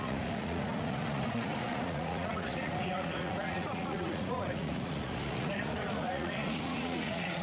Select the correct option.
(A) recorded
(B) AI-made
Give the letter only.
B